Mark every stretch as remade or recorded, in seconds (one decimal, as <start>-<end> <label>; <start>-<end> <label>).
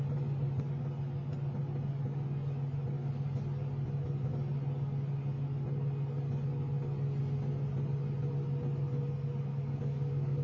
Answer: 0.0-9.5 recorded; 9.5-10.4 remade